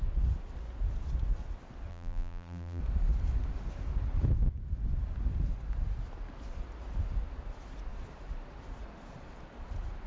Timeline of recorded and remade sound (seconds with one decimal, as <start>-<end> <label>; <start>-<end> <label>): 0.0-1.9 recorded; 1.9-2.8 remade; 2.8-10.1 recorded